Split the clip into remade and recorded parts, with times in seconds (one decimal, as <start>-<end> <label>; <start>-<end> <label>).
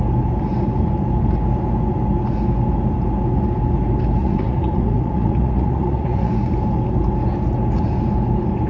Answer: 0.0-4.2 recorded; 4.2-6.3 remade; 6.3-8.7 recorded